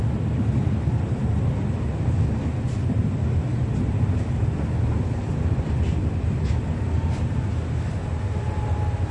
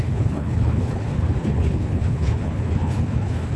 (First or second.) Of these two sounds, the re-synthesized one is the second